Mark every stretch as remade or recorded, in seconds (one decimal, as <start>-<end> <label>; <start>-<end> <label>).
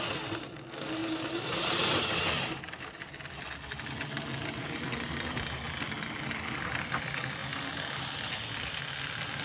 0.0-1.0 recorded; 1.0-2.6 remade; 2.6-9.4 recorded